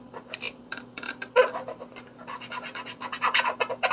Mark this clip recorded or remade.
remade